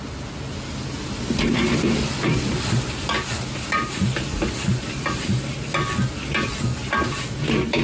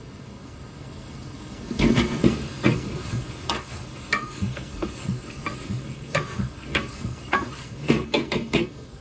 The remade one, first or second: second